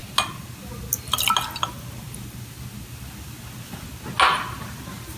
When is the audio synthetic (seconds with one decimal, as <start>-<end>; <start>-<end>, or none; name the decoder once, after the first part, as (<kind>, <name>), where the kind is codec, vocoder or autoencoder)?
none